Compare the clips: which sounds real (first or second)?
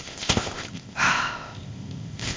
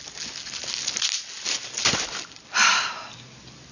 second